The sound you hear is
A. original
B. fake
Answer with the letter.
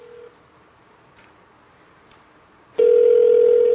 A